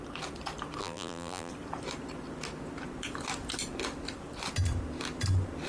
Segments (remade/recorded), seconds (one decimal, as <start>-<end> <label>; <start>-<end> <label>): 0.0-0.8 recorded; 0.8-1.5 remade; 1.5-5.7 recorded